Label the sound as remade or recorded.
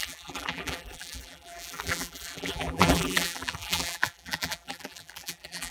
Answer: remade